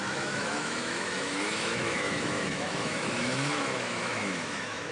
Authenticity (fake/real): fake